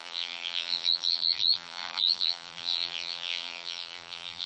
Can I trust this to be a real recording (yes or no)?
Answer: no